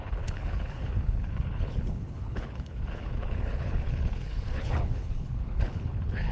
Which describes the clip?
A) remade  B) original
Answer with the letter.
A